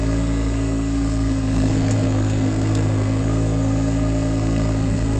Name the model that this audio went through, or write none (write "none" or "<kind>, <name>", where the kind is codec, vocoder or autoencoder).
codec, SNAC